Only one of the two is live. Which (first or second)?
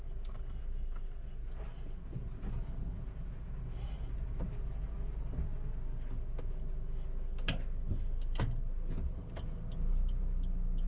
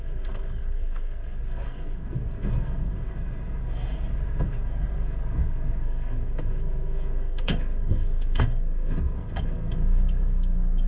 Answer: first